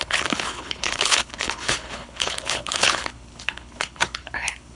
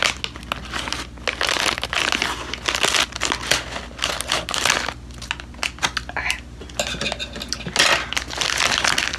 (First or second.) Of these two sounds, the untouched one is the second